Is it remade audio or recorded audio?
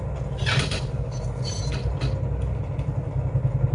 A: recorded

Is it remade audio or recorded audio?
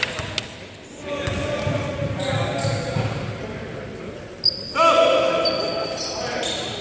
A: recorded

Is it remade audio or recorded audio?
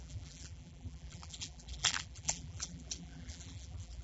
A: remade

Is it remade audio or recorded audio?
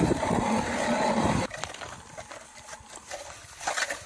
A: remade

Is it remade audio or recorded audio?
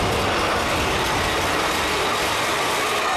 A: recorded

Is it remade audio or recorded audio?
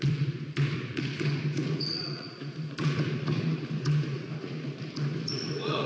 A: remade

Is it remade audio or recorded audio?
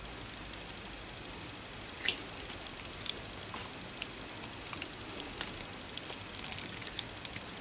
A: recorded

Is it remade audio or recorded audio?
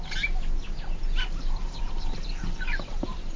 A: recorded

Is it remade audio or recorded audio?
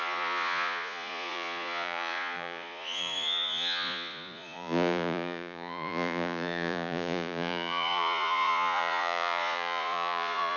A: remade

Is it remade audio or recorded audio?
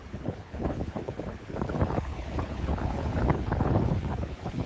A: remade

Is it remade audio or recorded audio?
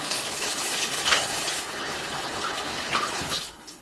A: remade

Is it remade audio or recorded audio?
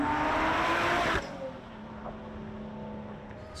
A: recorded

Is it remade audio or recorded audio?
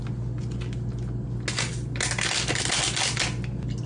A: recorded